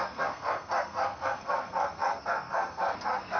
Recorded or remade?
remade